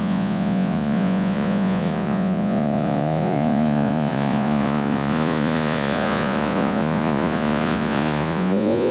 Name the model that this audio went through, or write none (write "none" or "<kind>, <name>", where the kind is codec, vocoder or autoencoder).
vocoder, Vocos